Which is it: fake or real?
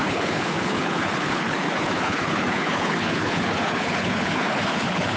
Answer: fake